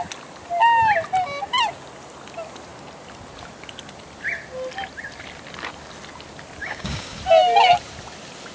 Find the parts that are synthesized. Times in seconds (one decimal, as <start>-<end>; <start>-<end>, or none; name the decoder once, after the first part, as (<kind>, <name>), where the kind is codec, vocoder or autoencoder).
6.6-7.2 (codec, DAC)